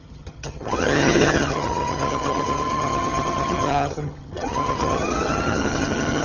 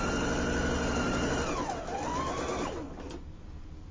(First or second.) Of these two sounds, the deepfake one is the first